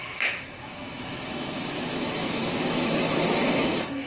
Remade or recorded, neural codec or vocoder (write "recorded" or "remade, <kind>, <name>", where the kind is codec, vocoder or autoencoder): remade, autoencoder, DAC-VAE